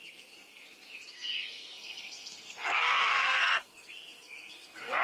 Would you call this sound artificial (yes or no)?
yes